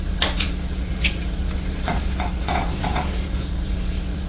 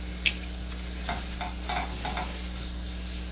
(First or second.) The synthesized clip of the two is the first